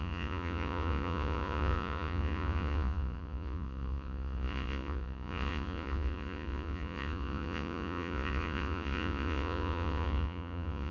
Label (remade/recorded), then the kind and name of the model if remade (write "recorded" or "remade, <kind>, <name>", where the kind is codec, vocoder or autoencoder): remade, vocoder, Vocos